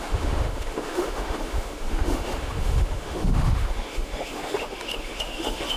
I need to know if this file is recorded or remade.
remade